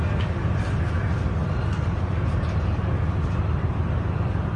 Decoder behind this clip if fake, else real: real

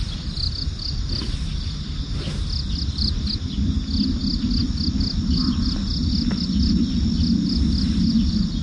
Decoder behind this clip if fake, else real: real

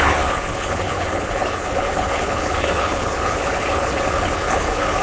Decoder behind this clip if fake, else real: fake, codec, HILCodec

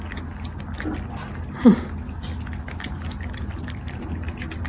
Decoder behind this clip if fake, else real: real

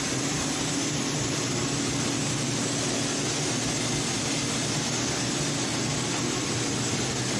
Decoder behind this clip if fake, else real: real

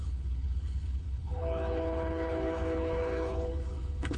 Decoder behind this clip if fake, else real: fake, codec, HILCodec